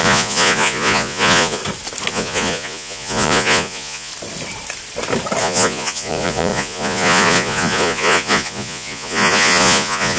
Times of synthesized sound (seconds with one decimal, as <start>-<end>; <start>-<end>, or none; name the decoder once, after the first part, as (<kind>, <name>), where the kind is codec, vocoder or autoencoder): 0.0-1.6 (vocoder, Vocos); 2.1-4.1; 5.4-10.2

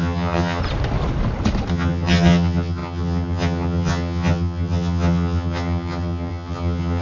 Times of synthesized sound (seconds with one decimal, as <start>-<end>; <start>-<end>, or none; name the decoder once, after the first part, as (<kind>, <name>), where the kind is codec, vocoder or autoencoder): 0.0-0.6 (vocoder, HiFi-GAN); 1.7-7.0

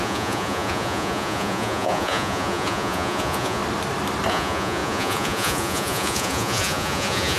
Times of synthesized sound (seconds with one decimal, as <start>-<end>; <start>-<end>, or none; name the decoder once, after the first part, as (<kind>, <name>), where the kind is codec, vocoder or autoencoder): 0.0-3.6 (vocoder, Vocos); 4.3-7.4

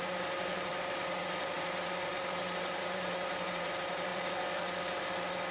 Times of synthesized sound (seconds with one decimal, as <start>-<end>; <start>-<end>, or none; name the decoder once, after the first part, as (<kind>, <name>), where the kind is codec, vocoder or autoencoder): 0.0-0.7 (vocoder, BigVGAN v2); 1.4-4.1

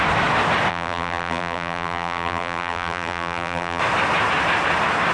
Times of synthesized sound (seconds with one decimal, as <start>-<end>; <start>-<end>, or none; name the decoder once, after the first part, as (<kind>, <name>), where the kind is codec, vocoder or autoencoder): 0.7-3.8 (vocoder, BigVGAN v2)

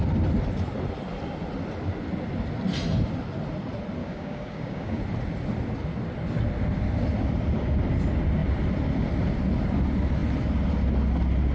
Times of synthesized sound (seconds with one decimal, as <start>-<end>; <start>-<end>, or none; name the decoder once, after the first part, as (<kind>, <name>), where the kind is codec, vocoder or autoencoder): 4.0-5.0 (codec, DAC)

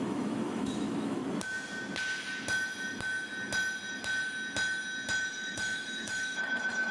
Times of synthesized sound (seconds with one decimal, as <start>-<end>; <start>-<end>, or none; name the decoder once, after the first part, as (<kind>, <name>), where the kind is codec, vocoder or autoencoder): 0.0-1.2 (autoencoder, DAC-VAE); 5.3-6.9

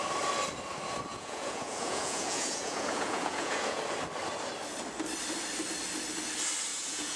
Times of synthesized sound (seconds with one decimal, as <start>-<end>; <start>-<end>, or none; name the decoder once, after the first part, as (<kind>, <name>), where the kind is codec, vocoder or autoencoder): 1.1-3.8 (vocoder, Vocos); 6.7-7.2